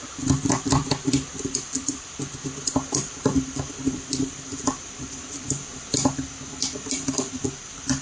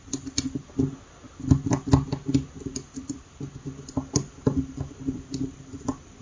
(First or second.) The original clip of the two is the second